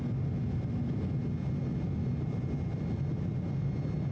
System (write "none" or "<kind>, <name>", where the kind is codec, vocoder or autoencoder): none